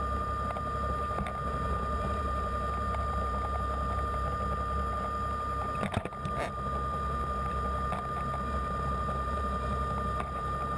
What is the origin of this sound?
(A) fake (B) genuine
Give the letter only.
A